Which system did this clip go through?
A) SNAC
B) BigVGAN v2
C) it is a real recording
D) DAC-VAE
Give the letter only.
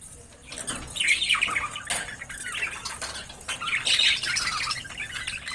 C